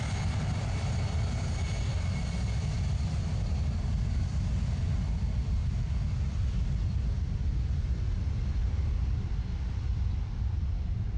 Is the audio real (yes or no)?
yes